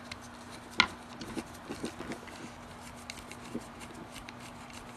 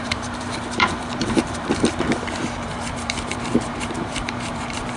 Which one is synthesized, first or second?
second